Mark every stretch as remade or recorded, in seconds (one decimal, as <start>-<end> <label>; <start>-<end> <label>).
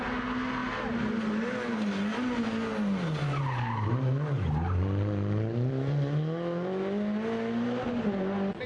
0.0-8.7 recorded